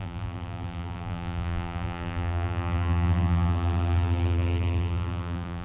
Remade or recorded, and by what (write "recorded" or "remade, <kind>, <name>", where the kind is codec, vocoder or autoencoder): remade, vocoder, BigVGAN v2